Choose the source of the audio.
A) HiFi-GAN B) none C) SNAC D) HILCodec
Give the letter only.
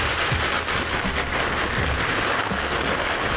B